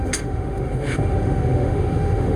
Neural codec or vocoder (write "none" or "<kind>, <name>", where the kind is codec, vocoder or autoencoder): autoencoder, DAC-VAE